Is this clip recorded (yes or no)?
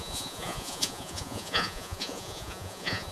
no